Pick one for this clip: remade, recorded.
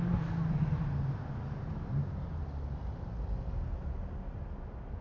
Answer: recorded